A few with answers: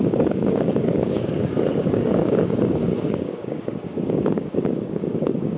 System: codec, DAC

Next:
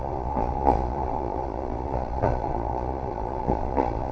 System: vocoder, Vocos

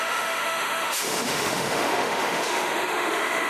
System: autoencoder, DAC-VAE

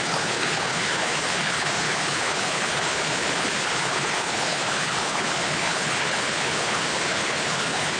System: codec, HILCodec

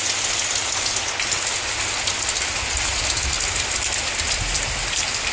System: none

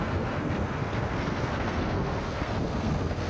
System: codec, SNAC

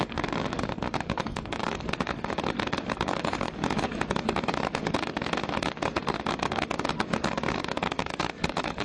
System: codec, DAC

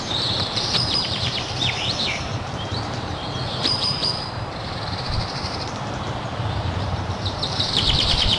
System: vocoder, BigVGAN v2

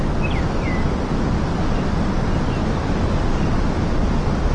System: none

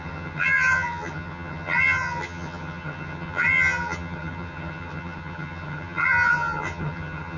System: vocoder, HiFi-GAN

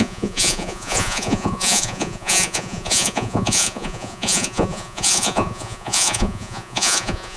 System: vocoder, Vocos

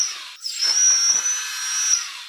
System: none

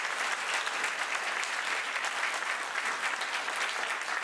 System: none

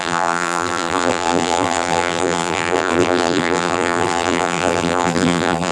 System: vocoder, BigVGAN v2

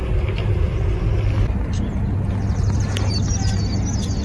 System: none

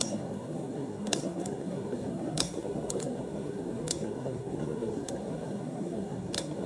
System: codec, SNAC